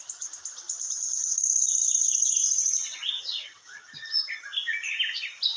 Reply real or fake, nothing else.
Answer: real